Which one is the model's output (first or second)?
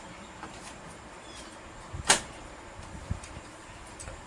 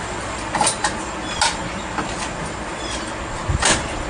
first